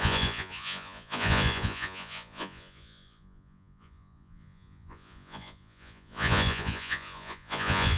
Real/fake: fake